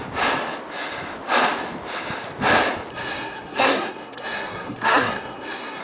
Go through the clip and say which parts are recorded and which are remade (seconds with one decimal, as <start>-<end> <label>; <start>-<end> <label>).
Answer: 0.0-2.9 recorded; 2.9-5.8 remade